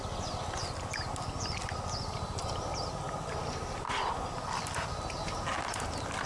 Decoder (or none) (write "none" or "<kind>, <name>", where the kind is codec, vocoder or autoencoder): none